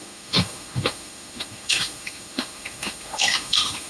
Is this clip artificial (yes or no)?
yes